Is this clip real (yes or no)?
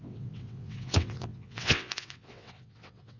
no